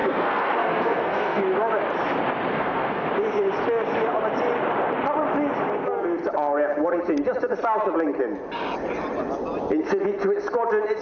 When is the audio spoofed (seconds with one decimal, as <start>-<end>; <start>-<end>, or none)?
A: 0.0-1.4; 2.5-3.1